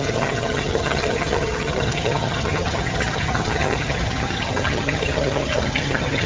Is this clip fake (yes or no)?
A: yes